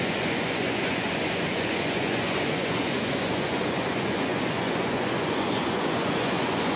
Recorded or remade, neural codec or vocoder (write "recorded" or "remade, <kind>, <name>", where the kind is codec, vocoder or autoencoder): remade, vocoder, Vocos